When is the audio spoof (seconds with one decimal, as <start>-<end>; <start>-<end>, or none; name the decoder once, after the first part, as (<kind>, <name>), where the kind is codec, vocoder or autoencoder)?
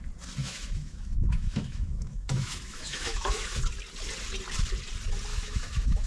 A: 0.4-3.6 (autoencoder, DAC-VAE); 5.3-6.1